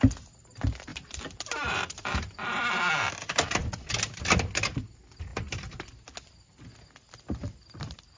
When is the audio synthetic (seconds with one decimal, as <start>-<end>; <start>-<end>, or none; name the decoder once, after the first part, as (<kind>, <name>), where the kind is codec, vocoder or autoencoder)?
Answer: 0.9-2.9 (vocoder, BigVGAN v2); 5.3-5.9